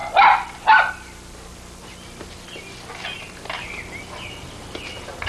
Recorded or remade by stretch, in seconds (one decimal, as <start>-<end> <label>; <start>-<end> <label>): 0.0-5.3 recorded